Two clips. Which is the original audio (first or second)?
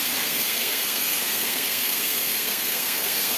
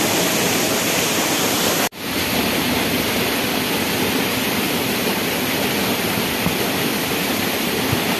second